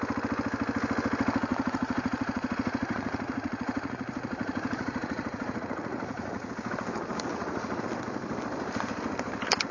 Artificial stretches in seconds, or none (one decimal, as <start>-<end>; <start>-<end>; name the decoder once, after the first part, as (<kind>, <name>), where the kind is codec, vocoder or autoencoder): 1.5-6.5 (vocoder, Vocos); 7.3-7.8